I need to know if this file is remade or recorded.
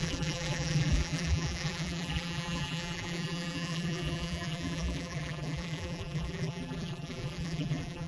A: remade